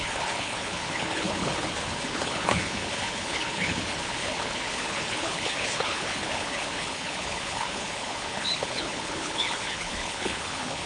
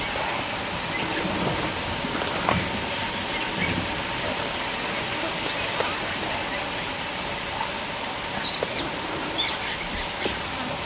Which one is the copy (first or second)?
first